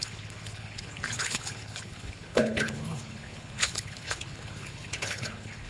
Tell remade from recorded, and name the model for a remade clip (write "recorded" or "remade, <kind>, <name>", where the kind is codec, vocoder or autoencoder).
remade, codec, HILCodec